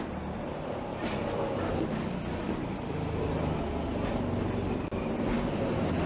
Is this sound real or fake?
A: real